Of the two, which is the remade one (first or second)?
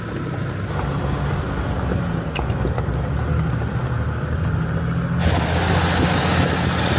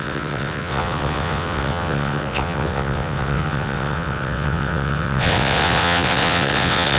second